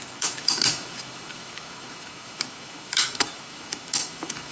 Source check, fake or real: fake